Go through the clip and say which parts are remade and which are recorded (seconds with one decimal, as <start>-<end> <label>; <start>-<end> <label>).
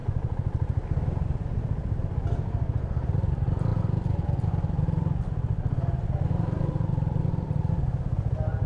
0.0-2.0 remade; 2.0-8.7 recorded